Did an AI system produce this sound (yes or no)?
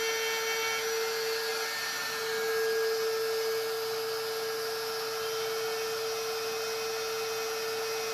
no